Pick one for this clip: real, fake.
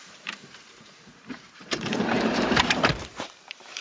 fake